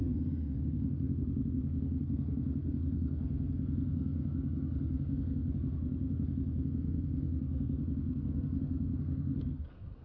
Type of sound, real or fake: fake